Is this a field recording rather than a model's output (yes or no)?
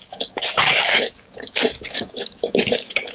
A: no